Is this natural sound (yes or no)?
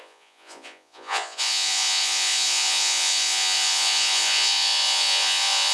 no